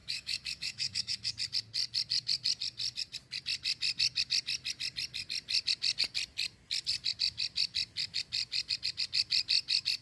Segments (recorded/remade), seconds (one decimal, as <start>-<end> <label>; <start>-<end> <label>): 0.0-1.3 remade; 1.3-10.0 recorded